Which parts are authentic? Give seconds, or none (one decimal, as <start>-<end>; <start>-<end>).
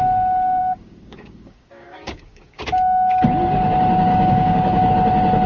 0.0-0.6; 2.6-4.1; 4.9-5.5